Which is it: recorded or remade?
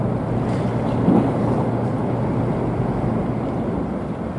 recorded